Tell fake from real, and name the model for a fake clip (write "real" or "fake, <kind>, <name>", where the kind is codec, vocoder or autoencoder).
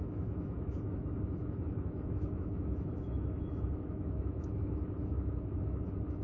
fake, autoencoder, DAC-VAE